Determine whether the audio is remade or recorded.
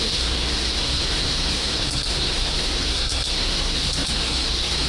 remade